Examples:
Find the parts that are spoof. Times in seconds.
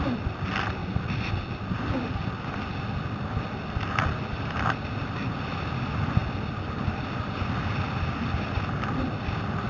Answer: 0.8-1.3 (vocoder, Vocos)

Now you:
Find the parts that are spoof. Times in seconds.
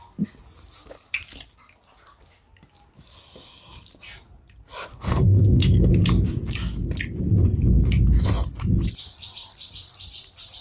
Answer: 4.9-5.9 (codec, SNAC)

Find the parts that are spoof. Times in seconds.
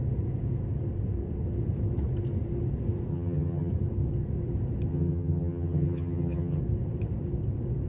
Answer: 3.1-3.7 (vocoder, HiFi-GAN); 4.9-6.6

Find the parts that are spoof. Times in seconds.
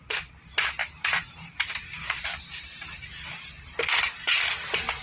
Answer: 0.8-3.8 (vocoder, BigVGAN v2)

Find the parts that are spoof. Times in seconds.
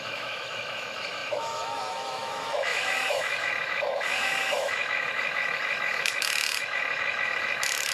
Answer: 0.0-7.9 (autoencoder, DAC-VAE)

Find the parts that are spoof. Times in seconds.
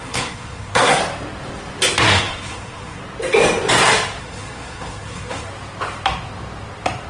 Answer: 0.0-1.0 (codec, SNAC); 2.0-3.0; 4.2-5.5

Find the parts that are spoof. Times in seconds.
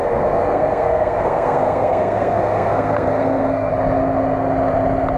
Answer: 0.0-3.7 (codec, SNAC)